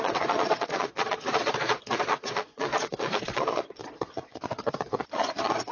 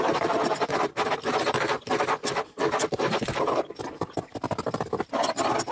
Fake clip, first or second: first